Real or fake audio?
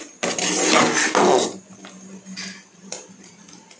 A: real